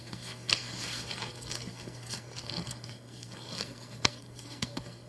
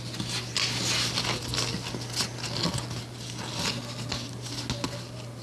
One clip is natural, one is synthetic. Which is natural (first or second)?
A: second